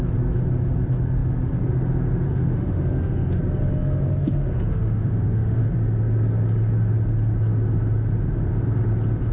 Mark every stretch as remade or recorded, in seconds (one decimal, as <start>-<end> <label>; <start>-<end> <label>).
0.0-2.3 recorded; 2.3-3.4 remade; 3.4-4.2 recorded; 4.2-5.6 remade; 5.6-9.3 recorded